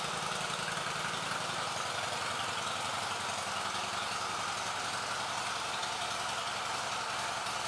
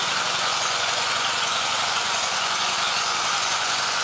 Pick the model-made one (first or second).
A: second